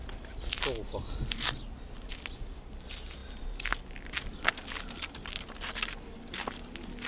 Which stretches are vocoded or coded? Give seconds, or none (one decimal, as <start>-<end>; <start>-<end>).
none